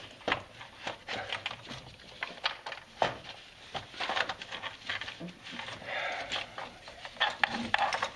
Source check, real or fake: real